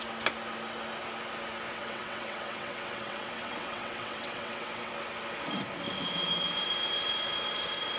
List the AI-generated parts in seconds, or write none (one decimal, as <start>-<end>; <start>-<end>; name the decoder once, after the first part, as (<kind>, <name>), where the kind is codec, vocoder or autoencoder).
1.7-4.9 (vocoder, WaveNeXt)